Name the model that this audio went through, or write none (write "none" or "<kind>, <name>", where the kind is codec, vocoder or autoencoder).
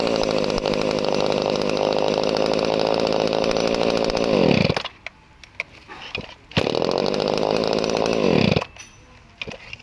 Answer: none